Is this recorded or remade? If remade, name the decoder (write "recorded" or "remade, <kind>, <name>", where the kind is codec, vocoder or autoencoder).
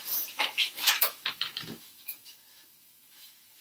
remade, autoencoder, DAC-VAE